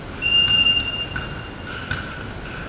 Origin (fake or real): real